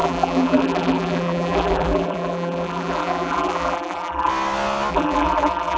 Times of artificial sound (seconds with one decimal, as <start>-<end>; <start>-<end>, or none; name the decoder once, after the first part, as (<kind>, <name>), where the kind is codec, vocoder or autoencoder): 0.0-4.3 (vocoder, BigVGAN v2); 4.9-5.8